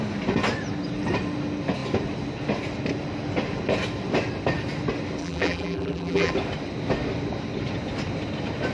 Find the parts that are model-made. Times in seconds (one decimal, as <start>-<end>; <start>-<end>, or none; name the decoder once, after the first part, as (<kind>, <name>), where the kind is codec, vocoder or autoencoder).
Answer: 5.2-6.3 (vocoder, BigVGAN v2)